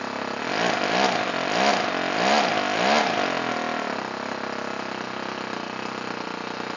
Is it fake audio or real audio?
real